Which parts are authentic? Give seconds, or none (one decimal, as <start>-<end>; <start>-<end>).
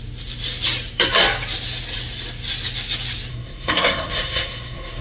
0.0-3.3